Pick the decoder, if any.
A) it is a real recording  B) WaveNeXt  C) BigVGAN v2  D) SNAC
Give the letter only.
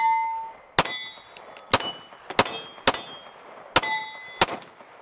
A